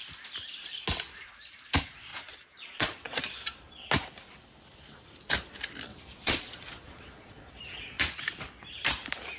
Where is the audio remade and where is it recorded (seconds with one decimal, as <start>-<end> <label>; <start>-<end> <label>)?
0.0-2.1 recorded; 2.1-3.2 remade; 3.2-5.9 recorded; 5.9-8.0 remade; 8.0-9.4 recorded